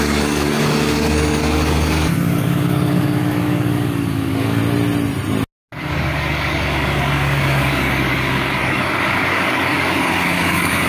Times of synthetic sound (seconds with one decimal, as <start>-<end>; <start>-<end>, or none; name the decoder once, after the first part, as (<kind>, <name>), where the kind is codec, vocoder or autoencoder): 0.0-4.6 (codec, DAC); 5.8-10.9